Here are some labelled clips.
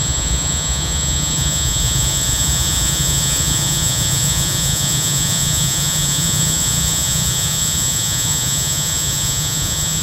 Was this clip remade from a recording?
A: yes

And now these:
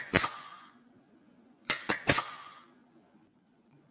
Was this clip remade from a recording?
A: yes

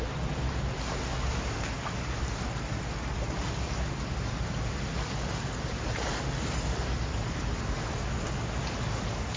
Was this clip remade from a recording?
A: no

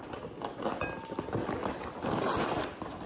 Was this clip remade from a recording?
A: no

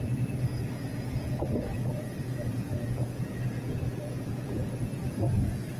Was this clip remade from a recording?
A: yes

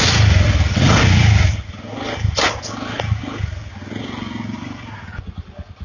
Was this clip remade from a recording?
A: no